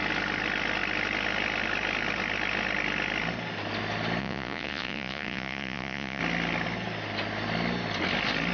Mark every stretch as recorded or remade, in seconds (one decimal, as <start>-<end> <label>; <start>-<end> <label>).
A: 0.0-4.2 recorded; 4.2-6.2 remade; 6.2-8.5 recorded